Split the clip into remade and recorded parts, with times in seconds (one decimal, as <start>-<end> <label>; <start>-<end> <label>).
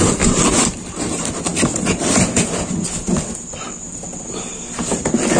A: 0.0-5.4 recorded